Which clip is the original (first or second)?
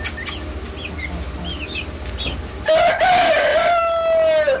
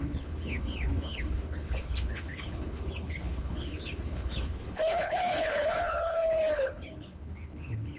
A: first